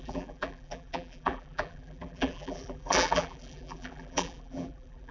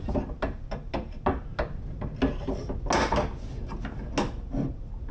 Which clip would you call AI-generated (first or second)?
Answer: first